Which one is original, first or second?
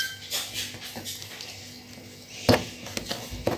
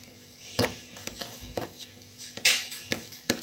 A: first